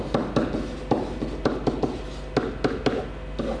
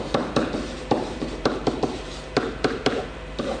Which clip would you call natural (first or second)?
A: first